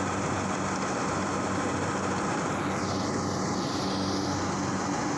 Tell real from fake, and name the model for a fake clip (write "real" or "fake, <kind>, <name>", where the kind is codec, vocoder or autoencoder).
real